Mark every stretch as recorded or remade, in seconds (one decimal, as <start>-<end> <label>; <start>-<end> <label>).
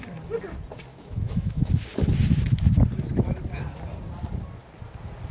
0.0-0.9 recorded; 0.9-1.7 remade; 1.7-5.3 recorded